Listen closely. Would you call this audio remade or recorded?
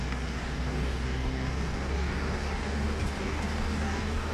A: remade